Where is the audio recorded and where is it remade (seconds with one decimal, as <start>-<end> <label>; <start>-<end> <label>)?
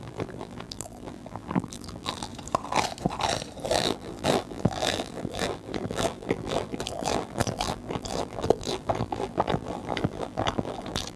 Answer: 0.0-2.3 remade; 2.3-3.7 recorded; 3.7-11.2 remade